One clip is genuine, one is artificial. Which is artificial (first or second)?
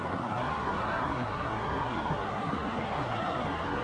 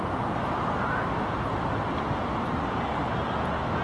first